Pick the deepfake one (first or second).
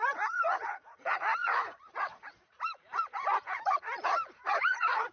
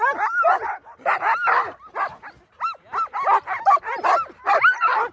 first